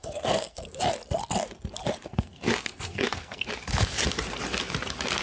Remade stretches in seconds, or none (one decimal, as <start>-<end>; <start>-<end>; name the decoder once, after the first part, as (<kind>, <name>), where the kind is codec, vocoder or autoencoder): 0.0-0.8 (codec, SNAC); 2.0-3.4